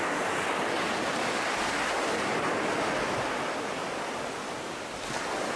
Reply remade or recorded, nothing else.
recorded